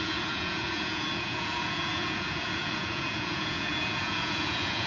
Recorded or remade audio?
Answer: remade